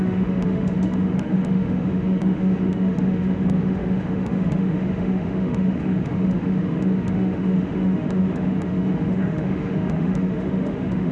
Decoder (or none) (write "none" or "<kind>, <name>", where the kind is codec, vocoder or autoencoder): autoencoder, DAC-VAE